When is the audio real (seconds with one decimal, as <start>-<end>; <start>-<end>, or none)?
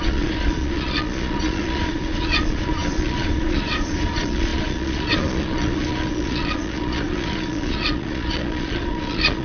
none